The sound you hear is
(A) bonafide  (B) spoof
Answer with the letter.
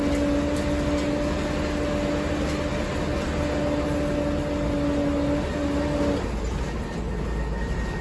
A